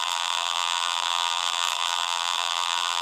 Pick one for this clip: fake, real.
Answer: fake